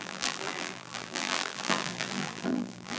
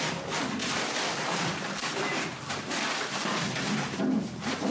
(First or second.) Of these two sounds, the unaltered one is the second